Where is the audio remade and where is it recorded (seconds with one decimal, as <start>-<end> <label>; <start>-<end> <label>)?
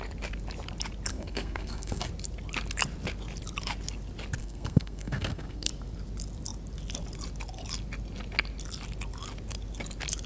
0.0-1.1 recorded; 1.1-2.1 remade; 2.1-4.4 recorded; 4.4-5.7 remade; 5.7-10.3 recorded